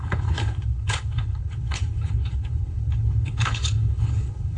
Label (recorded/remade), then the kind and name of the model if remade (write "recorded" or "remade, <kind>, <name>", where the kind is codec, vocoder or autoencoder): remade, codec, HILCodec